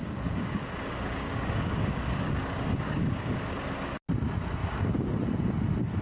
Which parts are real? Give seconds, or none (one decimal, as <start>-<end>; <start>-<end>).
3.6-4.6; 5.1-6.0